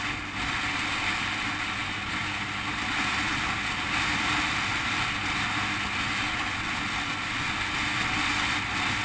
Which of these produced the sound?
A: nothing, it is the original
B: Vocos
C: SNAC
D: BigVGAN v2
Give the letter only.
A